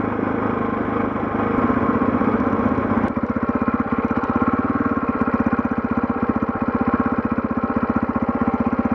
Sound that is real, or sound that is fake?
real